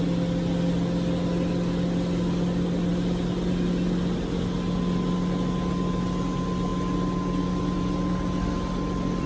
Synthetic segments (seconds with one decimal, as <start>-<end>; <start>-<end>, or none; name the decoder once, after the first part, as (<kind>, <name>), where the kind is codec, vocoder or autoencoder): none